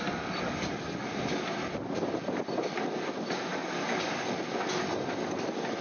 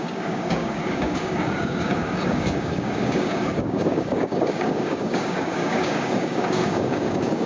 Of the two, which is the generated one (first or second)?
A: second